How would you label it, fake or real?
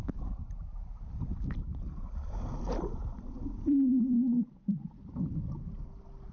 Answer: real